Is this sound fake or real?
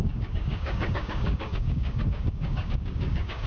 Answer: fake